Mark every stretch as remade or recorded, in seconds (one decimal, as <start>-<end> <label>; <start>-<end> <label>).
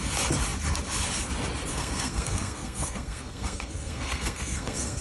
0.0-1.7 recorded; 1.7-5.0 remade